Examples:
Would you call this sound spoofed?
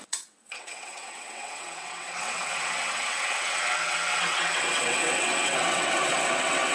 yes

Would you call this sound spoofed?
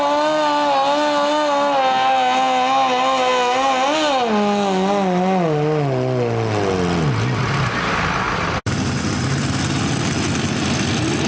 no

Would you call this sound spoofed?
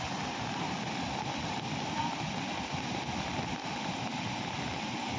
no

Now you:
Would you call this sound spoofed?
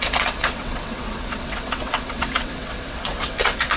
yes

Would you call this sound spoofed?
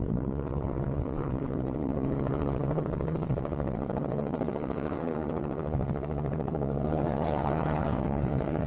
yes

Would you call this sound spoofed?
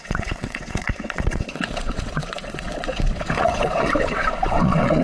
yes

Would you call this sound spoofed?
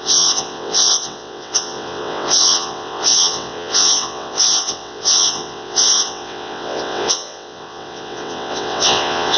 yes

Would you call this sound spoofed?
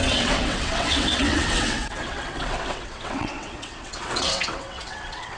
yes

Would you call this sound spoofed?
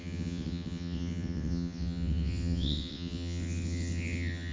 yes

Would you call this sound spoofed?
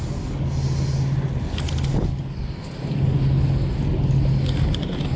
no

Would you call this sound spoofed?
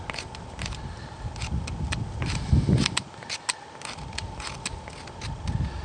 no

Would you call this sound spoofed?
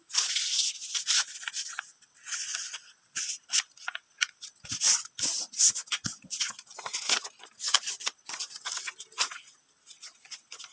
no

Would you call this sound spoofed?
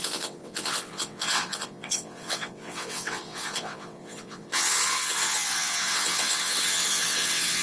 yes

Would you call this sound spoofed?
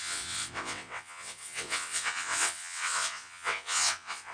yes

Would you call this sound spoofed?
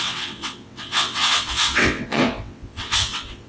yes